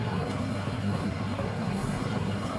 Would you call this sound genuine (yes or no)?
no